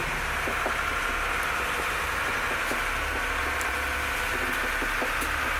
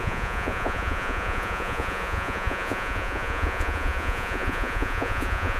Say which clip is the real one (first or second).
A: first